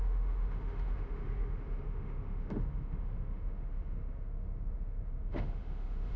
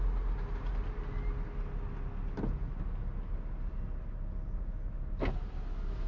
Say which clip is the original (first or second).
second